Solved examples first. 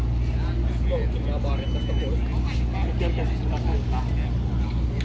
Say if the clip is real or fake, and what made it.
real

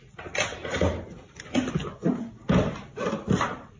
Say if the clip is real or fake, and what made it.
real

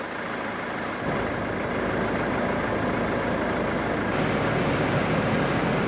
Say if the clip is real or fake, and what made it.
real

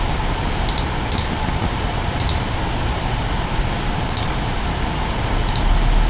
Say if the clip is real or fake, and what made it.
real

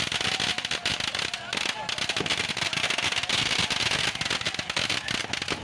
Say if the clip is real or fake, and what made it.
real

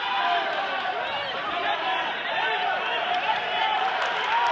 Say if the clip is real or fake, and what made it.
fake, vocoder, BigVGAN v2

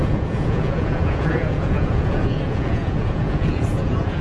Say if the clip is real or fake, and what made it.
fake, vocoder, Vocos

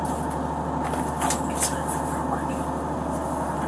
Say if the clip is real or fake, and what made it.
real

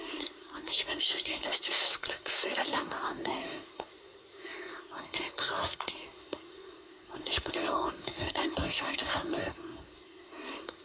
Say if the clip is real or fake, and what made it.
fake, codec, SNAC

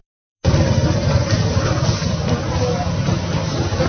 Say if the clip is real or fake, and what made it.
real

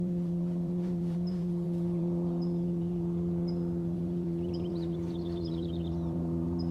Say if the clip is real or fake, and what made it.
fake, vocoder, BigVGAN v2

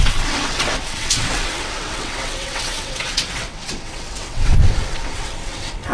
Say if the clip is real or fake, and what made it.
fake, vocoder, WaveNeXt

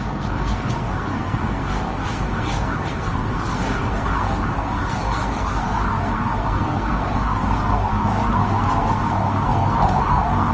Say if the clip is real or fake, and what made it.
fake, codec, SNAC